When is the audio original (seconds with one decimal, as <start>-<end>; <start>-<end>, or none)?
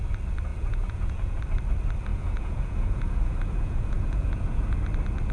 0.0-0.5; 1.4-2.1; 4.8-5.3